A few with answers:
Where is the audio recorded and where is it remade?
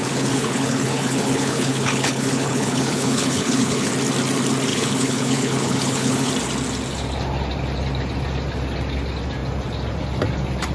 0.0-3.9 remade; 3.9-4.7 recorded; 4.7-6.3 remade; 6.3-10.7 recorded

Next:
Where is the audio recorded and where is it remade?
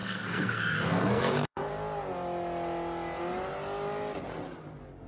0.0-1.7 remade; 1.7-5.1 recorded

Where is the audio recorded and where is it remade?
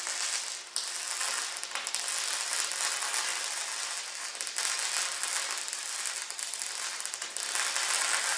0.0-8.4 recorded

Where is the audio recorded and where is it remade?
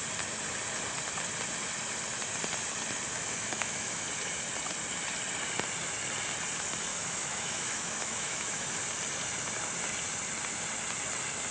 0.0-3.1 recorded; 3.1-4.0 remade; 4.0-6.9 recorded; 6.9-8.8 remade; 8.8-11.5 recorded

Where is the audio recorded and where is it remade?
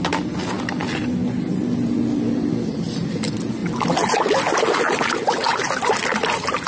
0.0-6.7 recorded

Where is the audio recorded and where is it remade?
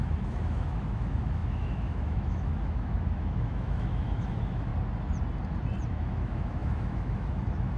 0.0-4.7 remade; 4.7-5.9 recorded; 5.9-7.8 remade